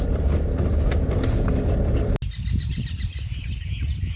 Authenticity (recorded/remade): recorded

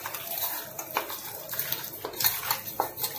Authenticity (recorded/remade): recorded